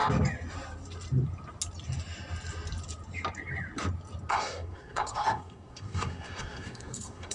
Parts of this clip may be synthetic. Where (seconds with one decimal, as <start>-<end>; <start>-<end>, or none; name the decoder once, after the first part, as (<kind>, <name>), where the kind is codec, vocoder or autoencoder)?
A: 4.3-7.3 (codec, SNAC)